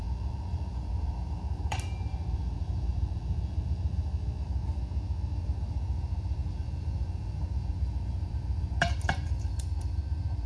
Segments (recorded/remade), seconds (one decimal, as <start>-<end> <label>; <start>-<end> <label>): 0.0-4.1 remade; 4.1-5.4 recorded; 5.4-10.5 remade